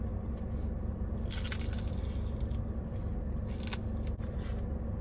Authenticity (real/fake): real